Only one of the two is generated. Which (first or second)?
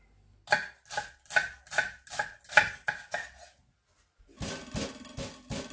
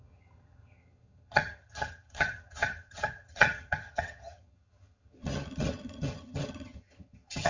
second